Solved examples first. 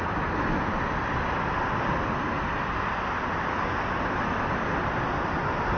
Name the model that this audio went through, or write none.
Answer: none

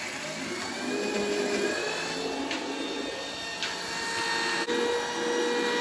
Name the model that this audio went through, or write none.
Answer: none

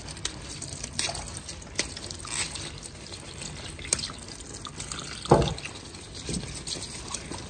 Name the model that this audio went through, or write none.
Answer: none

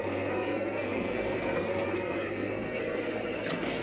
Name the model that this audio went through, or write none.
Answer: codec, SNAC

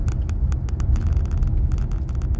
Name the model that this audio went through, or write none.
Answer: none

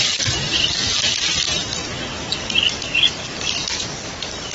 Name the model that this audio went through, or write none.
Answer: none